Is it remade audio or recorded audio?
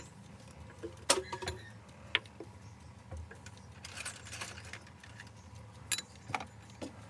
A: recorded